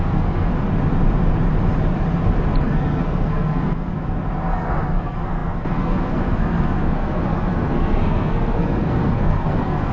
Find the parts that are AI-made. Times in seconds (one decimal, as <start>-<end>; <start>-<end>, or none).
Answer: 0.0-0.5; 2.6-3.9; 4.5-9.9